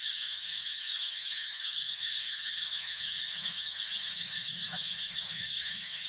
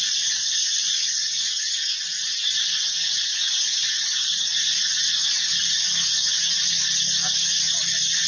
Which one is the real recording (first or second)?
second